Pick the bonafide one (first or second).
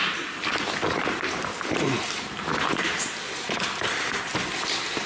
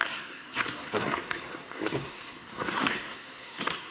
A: first